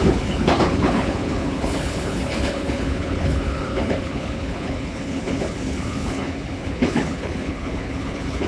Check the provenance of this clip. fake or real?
fake